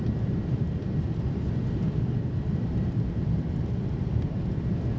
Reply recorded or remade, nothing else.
remade